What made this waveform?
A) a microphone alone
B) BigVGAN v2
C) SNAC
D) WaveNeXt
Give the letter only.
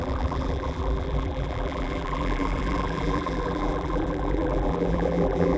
B